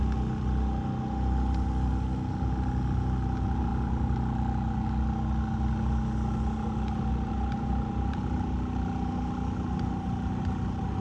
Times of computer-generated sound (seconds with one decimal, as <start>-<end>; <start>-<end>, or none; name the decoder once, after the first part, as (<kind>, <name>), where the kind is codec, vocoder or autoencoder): none